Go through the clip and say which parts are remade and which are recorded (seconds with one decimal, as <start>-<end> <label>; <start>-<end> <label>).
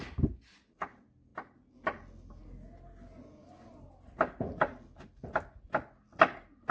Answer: 0.0-6.7 recorded